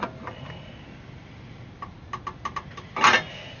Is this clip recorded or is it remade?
recorded